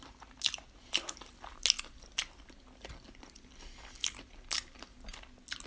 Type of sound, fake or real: real